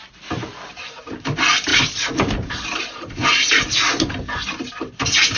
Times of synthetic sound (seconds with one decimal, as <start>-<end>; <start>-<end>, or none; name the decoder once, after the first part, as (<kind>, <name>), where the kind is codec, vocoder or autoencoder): none